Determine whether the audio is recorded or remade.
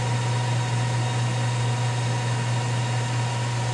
recorded